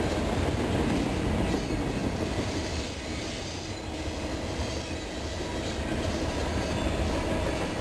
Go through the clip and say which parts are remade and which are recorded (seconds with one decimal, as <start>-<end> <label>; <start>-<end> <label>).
0.0-7.8 recorded